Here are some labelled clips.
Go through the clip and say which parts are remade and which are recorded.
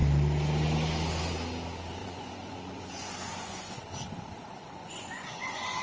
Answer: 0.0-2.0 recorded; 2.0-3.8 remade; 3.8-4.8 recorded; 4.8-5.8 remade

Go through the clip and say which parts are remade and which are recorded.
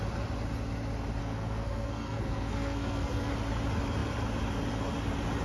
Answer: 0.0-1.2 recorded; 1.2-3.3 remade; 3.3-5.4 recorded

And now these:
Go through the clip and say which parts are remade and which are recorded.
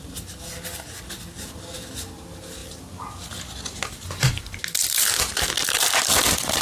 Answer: 0.0-6.6 recorded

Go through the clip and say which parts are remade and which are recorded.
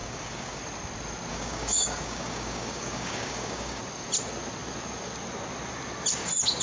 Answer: 0.0-0.6 remade; 0.6-1.3 recorded; 1.3-3.8 remade; 3.8-6.6 recorded